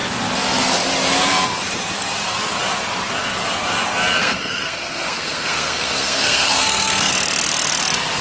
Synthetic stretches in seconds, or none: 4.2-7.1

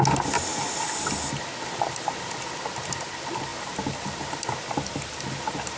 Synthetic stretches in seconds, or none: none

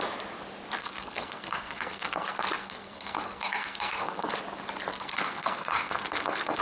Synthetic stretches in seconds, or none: 0.8-4.3; 4.9-6.6

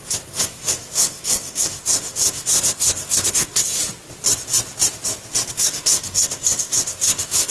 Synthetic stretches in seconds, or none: 0.0-3.8; 5.5-7.5

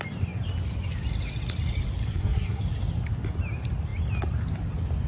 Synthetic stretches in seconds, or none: 2.1-2.6

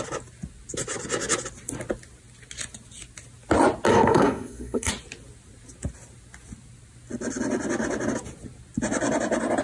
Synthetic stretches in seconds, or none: 3.9-4.9